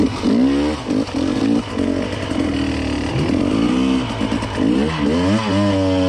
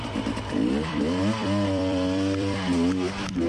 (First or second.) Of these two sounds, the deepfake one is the second